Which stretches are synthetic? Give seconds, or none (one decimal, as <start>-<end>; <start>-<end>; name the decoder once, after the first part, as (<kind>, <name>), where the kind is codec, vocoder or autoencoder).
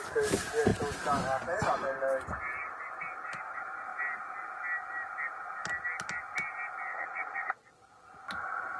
6.9-7.7 (vocoder, Vocos)